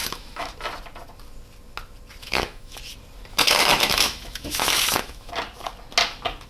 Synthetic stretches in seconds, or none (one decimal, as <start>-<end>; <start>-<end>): 0.0-0.5; 2.2-2.8; 3.3-5.3

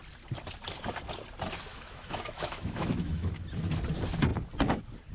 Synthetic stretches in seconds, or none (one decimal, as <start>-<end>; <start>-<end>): 1.7-3.3

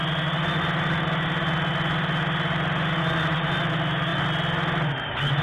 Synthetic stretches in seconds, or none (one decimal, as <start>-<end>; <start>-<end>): none

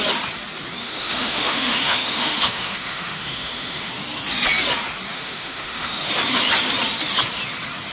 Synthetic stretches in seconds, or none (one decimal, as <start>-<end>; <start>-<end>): 0.8-3.9; 5.1-6.1